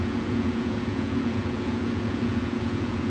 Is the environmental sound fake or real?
fake